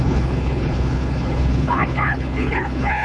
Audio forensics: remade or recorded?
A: remade